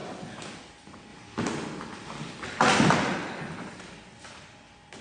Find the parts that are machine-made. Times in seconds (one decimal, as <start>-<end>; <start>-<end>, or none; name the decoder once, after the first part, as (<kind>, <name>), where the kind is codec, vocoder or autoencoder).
none